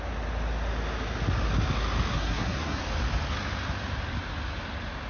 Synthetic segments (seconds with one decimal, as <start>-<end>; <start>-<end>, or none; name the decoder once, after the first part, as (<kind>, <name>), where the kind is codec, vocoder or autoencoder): 2.1-2.8 (codec, SNAC)